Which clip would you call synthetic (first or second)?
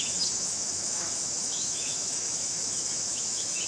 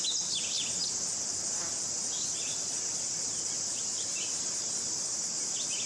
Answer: first